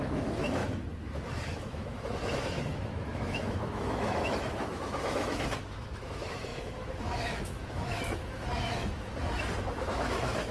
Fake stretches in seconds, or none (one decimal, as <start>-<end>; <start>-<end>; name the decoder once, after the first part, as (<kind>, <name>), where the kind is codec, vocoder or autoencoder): 0.0-9.1 (autoencoder, DAC-VAE); 9.8-10.5